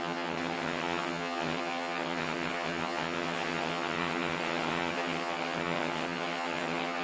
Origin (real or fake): fake